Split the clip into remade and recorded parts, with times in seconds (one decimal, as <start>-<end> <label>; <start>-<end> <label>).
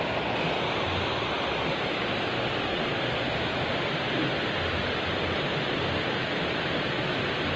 0.0-7.6 recorded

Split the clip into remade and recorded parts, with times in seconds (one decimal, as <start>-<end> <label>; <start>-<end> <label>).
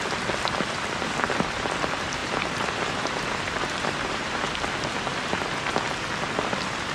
0.0-2.2 recorded; 2.2-4.4 remade; 4.4-5.1 recorded; 5.1-5.6 remade; 5.6-6.9 recorded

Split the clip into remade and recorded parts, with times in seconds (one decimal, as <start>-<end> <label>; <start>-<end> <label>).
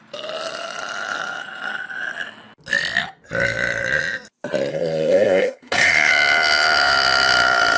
0.0-4.7 recorded; 4.7-6.1 remade; 6.1-7.8 recorded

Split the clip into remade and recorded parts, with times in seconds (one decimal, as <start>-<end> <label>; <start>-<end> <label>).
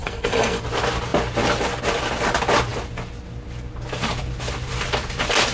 0.0-0.6 remade; 0.6-5.5 recorded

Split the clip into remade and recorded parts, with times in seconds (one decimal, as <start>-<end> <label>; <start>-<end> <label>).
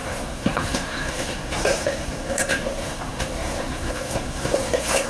0.0-5.1 remade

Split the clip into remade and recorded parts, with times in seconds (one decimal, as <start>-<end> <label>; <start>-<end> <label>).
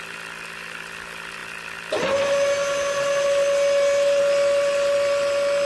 0.0-5.7 recorded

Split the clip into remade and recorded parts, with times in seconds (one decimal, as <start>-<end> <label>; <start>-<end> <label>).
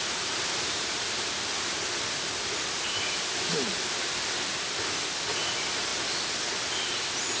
0.0-7.4 recorded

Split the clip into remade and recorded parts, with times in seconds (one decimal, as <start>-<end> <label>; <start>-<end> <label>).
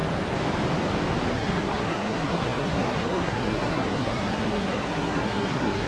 0.0-1.3 recorded; 1.3-5.9 remade